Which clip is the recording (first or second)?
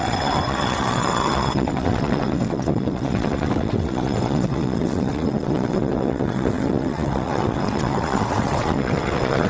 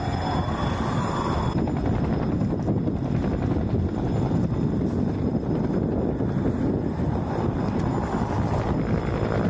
second